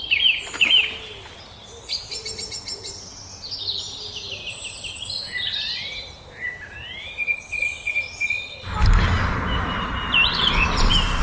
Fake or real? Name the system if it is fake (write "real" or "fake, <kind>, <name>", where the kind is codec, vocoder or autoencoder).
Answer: real